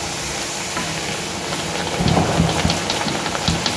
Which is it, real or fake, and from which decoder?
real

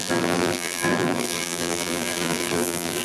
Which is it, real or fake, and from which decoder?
fake, vocoder, BigVGAN v2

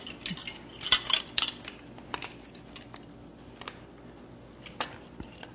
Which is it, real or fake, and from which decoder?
real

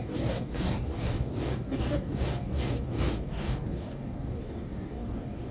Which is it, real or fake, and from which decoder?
fake, codec, DAC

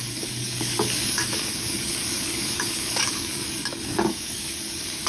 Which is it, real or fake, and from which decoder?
fake, codec, DAC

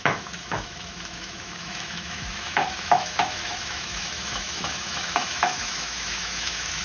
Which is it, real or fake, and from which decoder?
fake, autoencoder, DAC-VAE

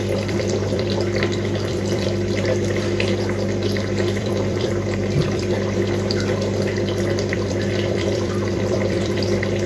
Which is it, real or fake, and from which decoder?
fake, vocoder, BigVGAN v2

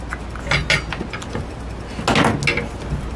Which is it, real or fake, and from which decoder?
real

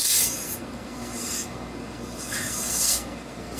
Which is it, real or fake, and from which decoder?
fake, codec, SNAC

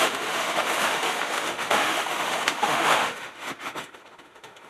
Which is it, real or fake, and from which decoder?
fake, autoencoder, DAC-VAE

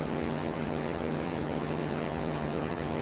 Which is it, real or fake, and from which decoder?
fake, vocoder, HiFi-GAN